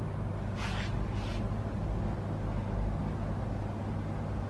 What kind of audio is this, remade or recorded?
recorded